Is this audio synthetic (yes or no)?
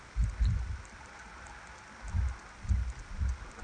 no